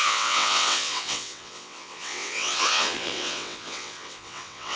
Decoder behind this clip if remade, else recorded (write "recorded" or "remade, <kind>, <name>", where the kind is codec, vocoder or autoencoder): remade, vocoder, WaveNeXt